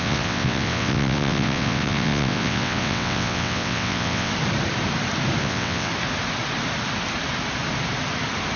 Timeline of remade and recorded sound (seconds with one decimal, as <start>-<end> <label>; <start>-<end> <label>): 0.0-4.3 remade; 4.3-5.4 recorded; 5.4-5.9 remade; 5.9-8.6 recorded